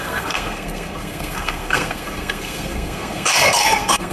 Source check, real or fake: fake